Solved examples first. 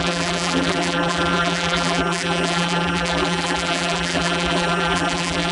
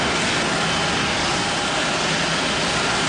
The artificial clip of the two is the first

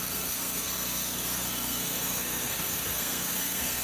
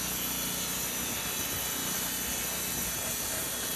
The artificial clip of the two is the first